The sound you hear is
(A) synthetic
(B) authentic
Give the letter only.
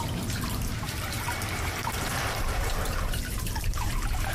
A